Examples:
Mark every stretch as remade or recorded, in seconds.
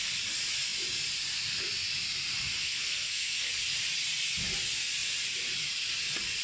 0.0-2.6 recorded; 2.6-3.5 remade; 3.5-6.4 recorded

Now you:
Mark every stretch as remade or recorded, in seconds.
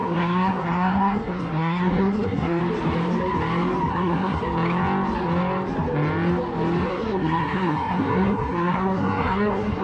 0.0-2.6 remade; 2.6-3.9 recorded; 3.9-4.4 remade; 4.4-6.9 recorded; 6.9-9.8 remade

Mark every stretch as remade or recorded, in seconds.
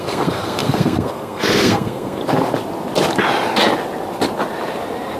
0.0-2.2 remade; 2.2-5.2 recorded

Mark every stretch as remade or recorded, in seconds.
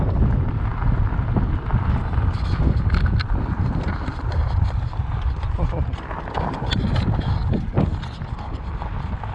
0.0-9.3 recorded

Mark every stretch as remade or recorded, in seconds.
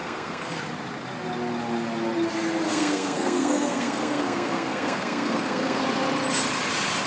0.0-0.6 remade; 0.6-2.7 recorded; 2.7-5.8 remade; 5.8-7.1 recorded